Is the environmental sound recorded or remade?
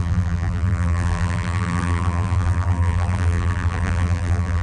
remade